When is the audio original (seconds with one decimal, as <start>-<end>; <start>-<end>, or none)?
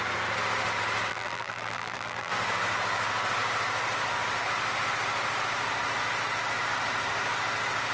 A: 0.0-1.1; 2.3-7.9